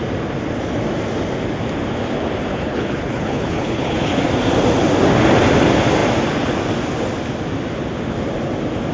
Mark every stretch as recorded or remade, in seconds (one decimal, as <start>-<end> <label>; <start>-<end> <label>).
0.0-2.5 recorded; 2.5-4.2 remade; 4.2-8.9 recorded